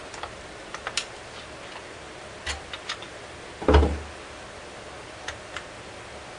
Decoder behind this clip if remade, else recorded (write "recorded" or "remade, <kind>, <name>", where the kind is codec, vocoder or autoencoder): remade, vocoder, BigVGAN v2